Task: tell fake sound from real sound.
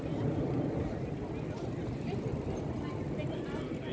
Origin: real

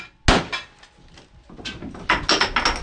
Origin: real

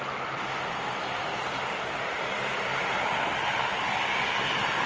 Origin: real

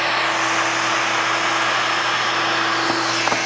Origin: real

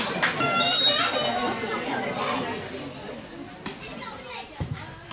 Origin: real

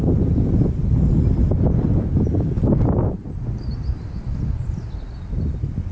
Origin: real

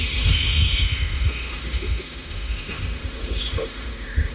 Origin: fake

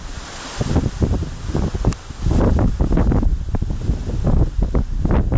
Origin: real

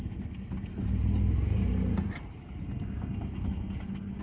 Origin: real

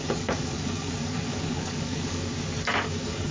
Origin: fake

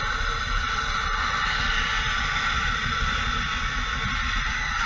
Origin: real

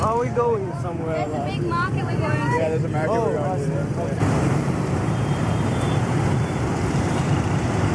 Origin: fake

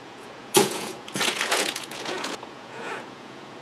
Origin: fake